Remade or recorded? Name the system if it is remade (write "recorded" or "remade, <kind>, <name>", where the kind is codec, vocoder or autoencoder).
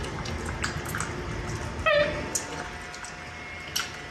recorded